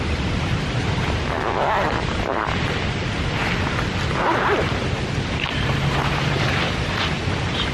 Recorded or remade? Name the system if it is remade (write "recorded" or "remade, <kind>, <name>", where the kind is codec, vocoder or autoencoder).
recorded